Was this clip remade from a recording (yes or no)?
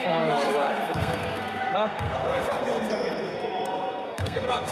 yes